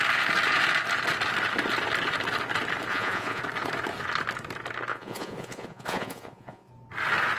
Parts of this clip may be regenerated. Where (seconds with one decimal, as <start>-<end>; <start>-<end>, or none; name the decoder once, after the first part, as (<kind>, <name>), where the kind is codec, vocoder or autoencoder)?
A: 2.9-3.4 (vocoder, Vocos); 4.9-6.7